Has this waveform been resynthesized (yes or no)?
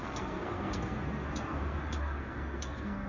yes